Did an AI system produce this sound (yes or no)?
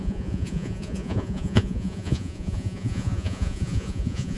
yes